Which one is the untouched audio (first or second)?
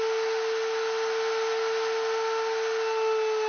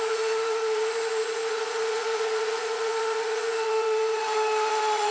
first